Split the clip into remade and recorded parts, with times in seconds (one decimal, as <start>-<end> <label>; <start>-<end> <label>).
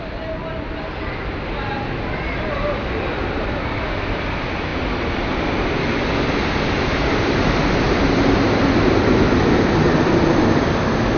0.0-11.2 recorded